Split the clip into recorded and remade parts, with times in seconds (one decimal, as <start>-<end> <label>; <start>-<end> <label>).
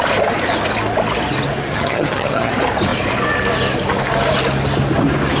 0.0-1.7 recorded; 1.7-2.5 remade; 2.5-5.4 recorded